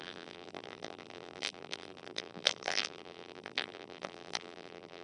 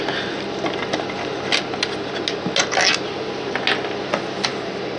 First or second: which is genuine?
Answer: second